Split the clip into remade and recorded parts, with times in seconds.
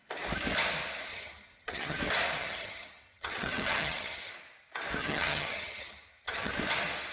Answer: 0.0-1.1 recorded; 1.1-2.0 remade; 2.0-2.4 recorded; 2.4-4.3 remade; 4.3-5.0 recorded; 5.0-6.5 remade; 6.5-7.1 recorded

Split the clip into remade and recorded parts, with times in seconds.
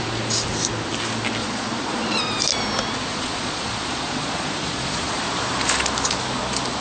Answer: 0.0-1.4 recorded; 1.4-2.2 remade; 2.2-3.1 recorded; 3.1-5.2 remade; 5.2-6.8 recorded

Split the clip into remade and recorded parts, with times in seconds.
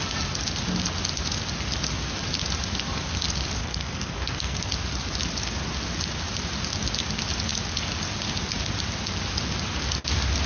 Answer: 0.0-3.6 recorded; 3.6-4.7 remade; 4.7-10.5 recorded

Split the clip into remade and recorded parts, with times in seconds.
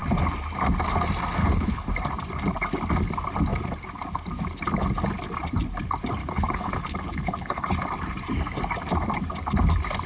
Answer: 0.0-1.4 recorded; 1.4-1.9 remade; 1.9-6.2 recorded; 6.2-7.7 remade; 7.7-10.1 recorded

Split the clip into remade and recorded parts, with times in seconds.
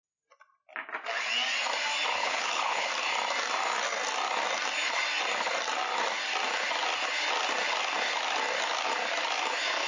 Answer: 0.0-2.2 recorded; 2.2-2.9 remade; 2.9-9.9 recorded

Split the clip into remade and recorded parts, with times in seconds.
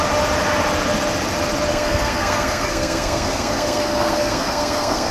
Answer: 0.0-1.7 recorded; 1.7-5.1 remade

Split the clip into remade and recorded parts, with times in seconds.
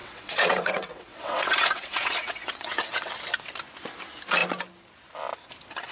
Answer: 0.0-3.1 remade; 3.1-5.9 recorded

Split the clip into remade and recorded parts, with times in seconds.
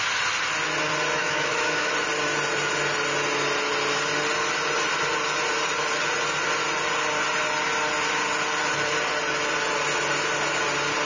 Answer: 0.0-1.2 recorded; 1.2-1.9 remade; 1.9-11.1 recorded